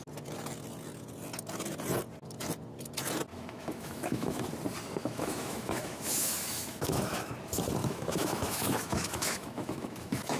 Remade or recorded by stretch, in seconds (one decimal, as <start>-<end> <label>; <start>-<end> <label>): 0.0-3.3 recorded; 3.3-4.4 remade; 4.4-5.0 recorded; 5.0-7.3 remade; 7.3-7.8 recorded; 7.8-10.4 remade